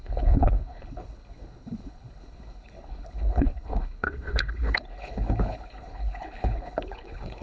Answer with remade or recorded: remade